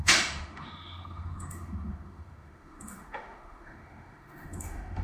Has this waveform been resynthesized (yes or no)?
yes